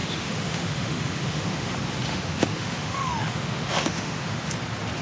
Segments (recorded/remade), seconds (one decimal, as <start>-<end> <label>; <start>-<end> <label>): 0.0-1.7 remade; 1.7-2.1 recorded; 2.1-4.5 remade; 4.5-5.0 recorded